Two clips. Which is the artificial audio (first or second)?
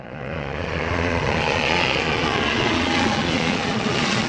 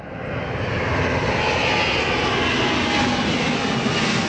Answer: first